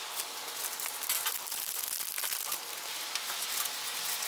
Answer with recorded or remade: recorded